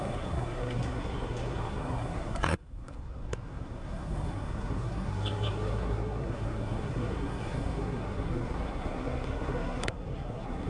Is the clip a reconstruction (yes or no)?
yes